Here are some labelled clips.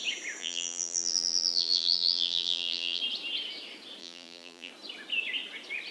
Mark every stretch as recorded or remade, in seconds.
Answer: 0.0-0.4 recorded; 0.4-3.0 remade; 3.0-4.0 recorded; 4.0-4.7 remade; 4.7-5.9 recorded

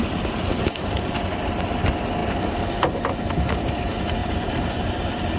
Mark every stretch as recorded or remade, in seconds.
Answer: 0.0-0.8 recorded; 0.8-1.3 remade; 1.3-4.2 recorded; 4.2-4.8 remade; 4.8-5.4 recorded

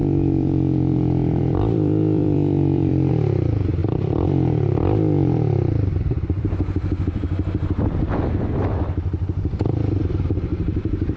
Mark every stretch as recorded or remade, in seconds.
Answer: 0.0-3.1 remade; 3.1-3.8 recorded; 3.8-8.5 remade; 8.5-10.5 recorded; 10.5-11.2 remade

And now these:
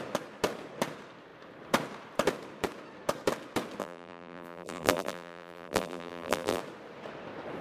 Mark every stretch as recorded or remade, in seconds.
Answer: 0.0-3.8 recorded; 3.8-6.6 remade; 6.6-7.6 recorded

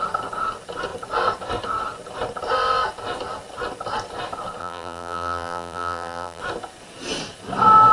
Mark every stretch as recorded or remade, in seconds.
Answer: 0.0-4.6 recorded; 4.6-6.4 remade; 6.4-7.9 recorded